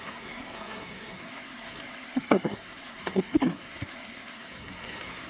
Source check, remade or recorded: remade